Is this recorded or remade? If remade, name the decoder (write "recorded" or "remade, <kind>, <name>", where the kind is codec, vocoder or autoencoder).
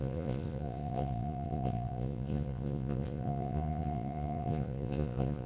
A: remade, vocoder, Vocos